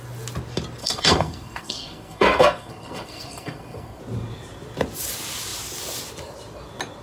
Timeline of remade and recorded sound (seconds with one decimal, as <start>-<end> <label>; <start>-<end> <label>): 0.0-0.8 recorded; 0.8-4.0 remade; 4.0-7.0 recorded